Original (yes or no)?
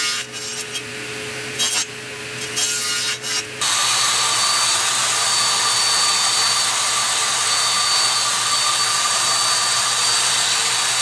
yes